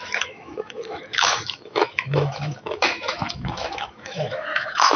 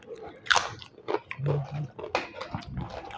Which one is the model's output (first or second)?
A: first